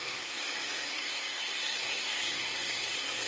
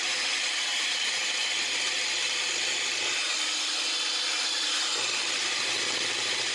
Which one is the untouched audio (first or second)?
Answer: second